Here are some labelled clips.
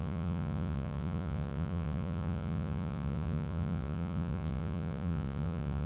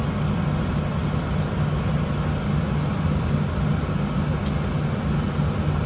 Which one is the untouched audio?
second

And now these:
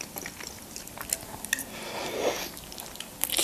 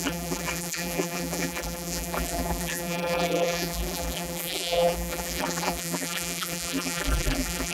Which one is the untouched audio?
first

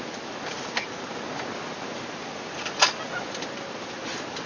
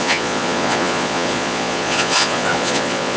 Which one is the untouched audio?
first